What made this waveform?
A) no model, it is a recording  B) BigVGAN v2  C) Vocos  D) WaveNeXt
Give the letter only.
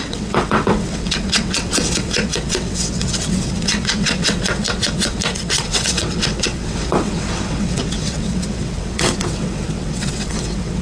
D